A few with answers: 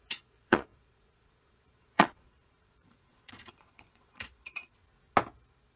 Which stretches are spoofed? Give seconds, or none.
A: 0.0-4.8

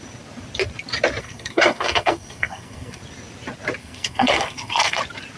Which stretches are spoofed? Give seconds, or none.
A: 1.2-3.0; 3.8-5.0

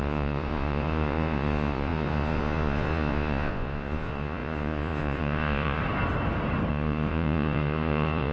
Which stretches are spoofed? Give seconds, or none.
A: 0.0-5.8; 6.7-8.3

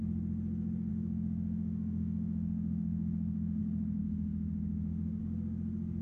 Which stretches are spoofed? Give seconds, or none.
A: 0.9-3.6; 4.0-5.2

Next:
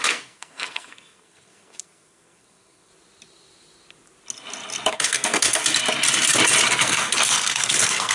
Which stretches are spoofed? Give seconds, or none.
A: 0.0-2.9; 4.9-5.6; 6.7-8.1